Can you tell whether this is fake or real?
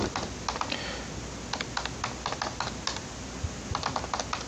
real